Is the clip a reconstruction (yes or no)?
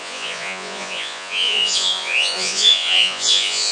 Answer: yes